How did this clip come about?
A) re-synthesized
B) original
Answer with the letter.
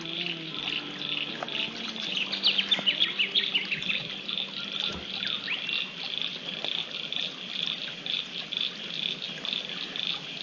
B